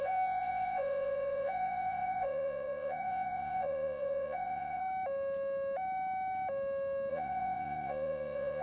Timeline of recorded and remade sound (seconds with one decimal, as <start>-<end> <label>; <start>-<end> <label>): 0.0-4.8 remade; 4.8-7.1 recorded; 7.1-8.6 remade